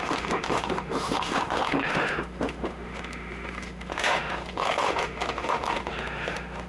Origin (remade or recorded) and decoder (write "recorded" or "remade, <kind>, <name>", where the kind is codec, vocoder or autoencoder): remade, autoencoder, DAC-VAE